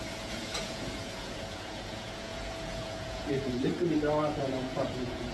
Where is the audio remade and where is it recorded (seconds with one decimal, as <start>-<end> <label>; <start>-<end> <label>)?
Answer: 0.0-3.7 remade; 3.7-4.3 recorded; 4.3-5.3 remade